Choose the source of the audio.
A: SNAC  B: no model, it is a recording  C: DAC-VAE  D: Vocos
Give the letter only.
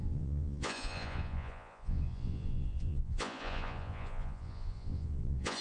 D